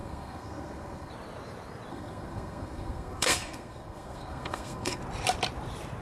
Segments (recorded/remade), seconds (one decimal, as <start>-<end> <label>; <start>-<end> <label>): 0.0-1.1 remade; 1.1-1.9 recorded; 1.9-5.0 remade; 5.0-6.0 recorded